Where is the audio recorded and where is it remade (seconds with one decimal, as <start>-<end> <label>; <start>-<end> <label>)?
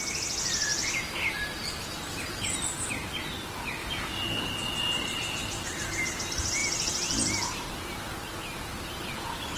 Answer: 0.0-0.7 recorded; 0.7-2.9 remade; 2.9-3.8 recorded; 3.8-4.4 remade; 4.4-6.6 recorded; 6.6-7.7 remade; 7.7-9.6 recorded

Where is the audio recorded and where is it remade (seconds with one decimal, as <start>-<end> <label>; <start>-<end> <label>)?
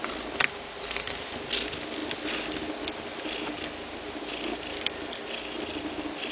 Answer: 0.0-6.3 recorded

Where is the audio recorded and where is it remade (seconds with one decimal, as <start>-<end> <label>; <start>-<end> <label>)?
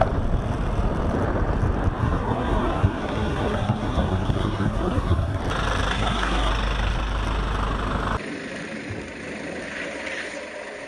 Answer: 0.0-2.0 recorded; 2.0-5.4 remade; 5.4-5.9 recorded; 5.9-6.5 remade; 6.5-10.9 recorded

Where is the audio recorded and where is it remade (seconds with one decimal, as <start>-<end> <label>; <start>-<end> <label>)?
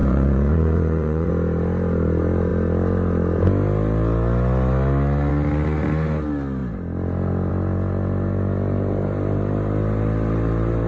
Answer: 0.0-1.3 remade; 1.3-10.9 recorded